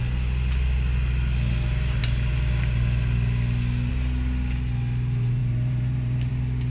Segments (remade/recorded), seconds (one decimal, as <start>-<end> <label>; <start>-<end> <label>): 0.0-5.4 recorded; 5.4-6.3 remade; 6.3-6.7 recorded